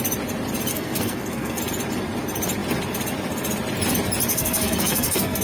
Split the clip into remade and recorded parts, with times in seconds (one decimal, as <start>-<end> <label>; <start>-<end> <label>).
0.0-0.7 recorded; 0.7-1.6 remade; 1.6-4.3 recorded; 4.3-5.4 remade